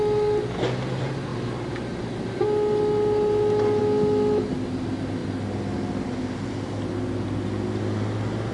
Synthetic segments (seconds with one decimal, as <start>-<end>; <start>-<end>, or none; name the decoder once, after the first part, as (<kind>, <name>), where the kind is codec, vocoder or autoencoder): none